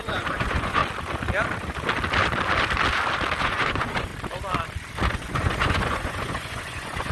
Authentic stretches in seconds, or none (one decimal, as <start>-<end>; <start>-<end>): 0.8-3.4; 4.1-5.1